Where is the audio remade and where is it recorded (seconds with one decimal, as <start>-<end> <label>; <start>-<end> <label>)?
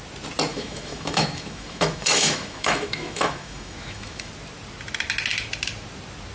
0.0-0.5 recorded; 0.5-4.3 remade; 4.3-6.3 recorded